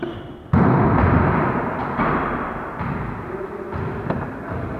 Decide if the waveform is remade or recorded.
recorded